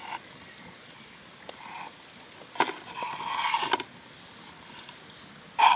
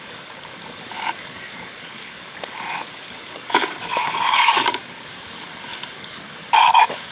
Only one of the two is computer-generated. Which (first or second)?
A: second